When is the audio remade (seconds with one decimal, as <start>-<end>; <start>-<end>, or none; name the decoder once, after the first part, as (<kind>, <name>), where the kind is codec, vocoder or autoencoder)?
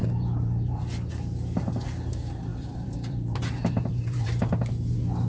0.0-1.1 (vocoder, BigVGAN v2); 2.5-4.5